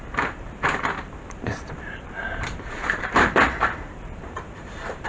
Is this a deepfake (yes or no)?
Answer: yes